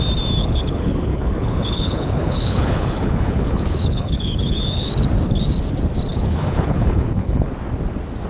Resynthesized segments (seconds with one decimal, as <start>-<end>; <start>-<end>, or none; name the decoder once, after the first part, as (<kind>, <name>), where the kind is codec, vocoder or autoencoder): 0.4-4.9 (codec, HILCodec); 6.1-7.5